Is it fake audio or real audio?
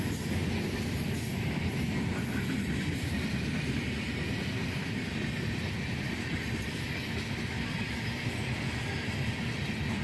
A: real